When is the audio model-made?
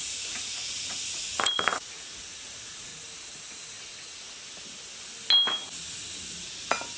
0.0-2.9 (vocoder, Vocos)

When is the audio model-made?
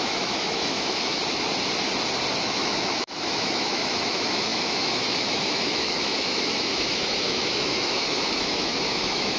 0.0-1.2 (autoencoder, DAC-VAE); 2.4-9.4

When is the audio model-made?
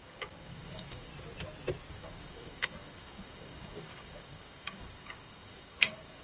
0.0-1.1 (codec, DAC); 1.9-6.2